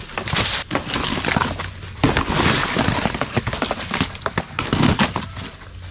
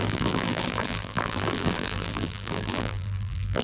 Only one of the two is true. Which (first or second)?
first